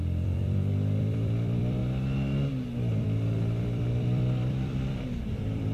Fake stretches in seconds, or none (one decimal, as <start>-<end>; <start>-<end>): 0.0-1.8; 3.0-5.7